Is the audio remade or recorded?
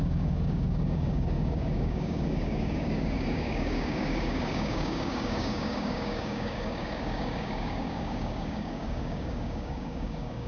remade